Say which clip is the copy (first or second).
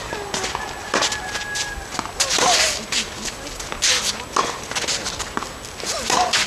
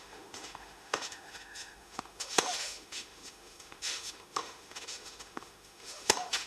second